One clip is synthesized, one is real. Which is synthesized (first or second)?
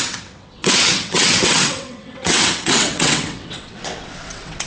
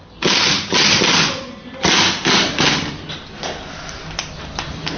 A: first